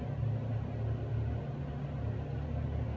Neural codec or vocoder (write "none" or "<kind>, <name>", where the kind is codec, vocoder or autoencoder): none